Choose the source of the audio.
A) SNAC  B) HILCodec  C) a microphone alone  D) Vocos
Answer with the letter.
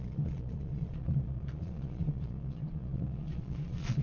D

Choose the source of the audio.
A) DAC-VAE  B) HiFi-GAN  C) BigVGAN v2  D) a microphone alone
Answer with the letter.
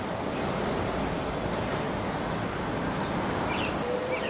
D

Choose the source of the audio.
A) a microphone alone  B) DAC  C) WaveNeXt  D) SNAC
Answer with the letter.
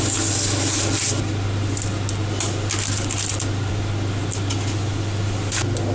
A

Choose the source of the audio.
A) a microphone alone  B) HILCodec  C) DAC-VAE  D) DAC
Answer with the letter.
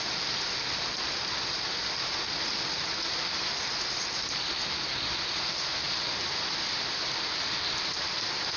A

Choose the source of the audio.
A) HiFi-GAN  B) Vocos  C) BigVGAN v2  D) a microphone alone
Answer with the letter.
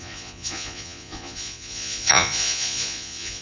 B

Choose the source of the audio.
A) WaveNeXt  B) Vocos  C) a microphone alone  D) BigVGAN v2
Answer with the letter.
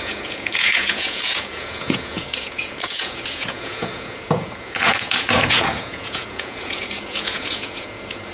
B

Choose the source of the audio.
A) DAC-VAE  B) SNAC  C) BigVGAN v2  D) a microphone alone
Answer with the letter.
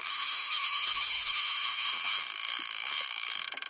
A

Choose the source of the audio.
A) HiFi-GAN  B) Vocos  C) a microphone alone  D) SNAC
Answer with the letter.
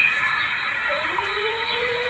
B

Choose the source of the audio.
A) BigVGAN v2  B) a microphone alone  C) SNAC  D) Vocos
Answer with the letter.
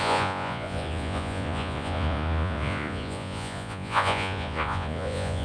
D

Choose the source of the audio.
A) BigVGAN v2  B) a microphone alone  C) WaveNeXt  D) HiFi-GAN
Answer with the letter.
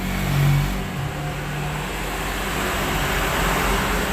B